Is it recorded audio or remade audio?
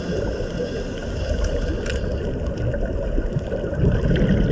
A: recorded